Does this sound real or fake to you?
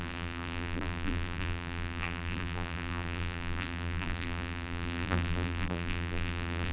fake